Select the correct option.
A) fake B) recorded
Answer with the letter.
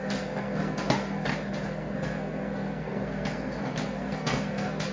A